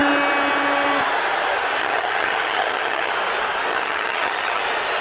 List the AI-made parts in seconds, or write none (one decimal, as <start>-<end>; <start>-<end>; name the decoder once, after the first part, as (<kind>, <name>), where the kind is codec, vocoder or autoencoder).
1.8-3.1 (vocoder, HiFi-GAN); 3.7-4.6